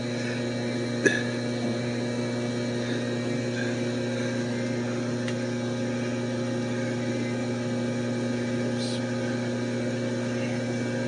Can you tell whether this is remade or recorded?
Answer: recorded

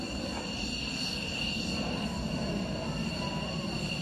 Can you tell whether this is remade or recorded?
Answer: recorded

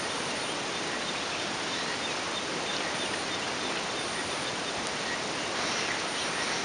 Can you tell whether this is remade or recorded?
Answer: recorded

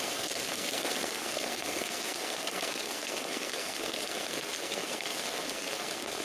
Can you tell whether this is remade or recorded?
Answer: remade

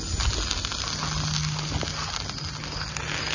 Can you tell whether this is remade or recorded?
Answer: recorded